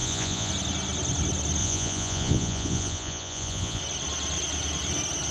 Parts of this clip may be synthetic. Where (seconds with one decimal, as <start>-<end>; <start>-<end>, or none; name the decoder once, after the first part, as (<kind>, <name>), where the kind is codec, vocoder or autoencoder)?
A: 0.0-0.5 (vocoder, Vocos); 1.6-3.8